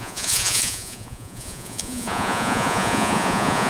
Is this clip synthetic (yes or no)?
yes